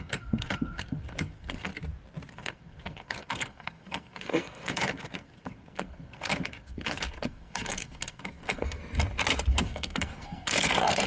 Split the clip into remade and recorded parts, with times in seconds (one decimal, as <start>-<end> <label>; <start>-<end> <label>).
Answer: 0.0-1.7 remade; 1.7-2.3 recorded; 2.3-8.8 remade; 8.8-9.5 recorded; 9.5-11.1 remade